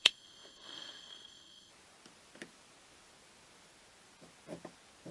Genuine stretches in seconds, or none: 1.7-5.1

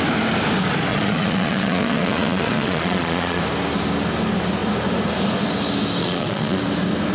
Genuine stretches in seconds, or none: 0.0-0.9; 3.4-6.0; 6.6-7.1

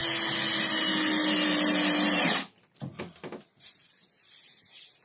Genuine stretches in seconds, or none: 0.0-5.0

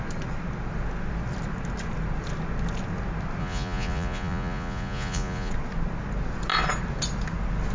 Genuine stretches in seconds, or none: 0.0-3.4; 5.5-7.7

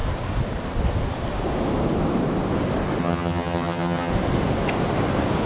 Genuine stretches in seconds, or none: 0.0-3.0; 4.1-5.5

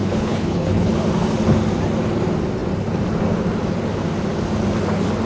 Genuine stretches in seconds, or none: 0.9-5.3

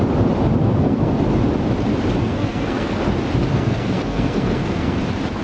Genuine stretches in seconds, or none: 0.0-0.6; 1.2-2.2; 3.0-3.5; 5.0-5.4